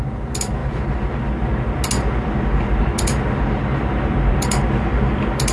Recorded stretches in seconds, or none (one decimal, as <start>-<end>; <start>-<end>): 0.0-3.7; 4.6-5.5